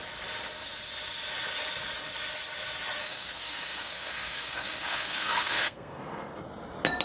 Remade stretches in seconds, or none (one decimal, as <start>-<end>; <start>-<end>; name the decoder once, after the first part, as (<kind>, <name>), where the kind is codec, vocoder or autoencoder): 3.0-6.5 (codec, SNAC)